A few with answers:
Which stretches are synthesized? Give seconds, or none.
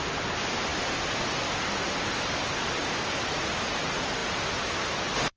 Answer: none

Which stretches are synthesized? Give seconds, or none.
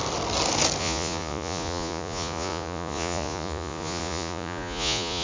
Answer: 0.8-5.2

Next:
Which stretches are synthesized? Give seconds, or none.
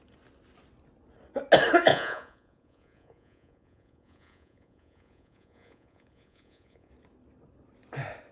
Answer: 1.9-6.9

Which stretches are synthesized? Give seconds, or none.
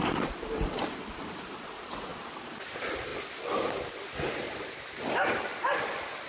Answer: none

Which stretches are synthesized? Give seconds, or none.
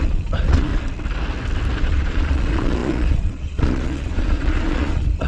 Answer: 0.0-0.7; 1.8-5.3